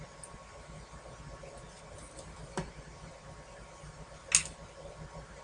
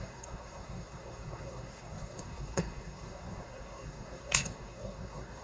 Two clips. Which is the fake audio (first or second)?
second